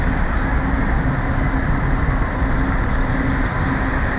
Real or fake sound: real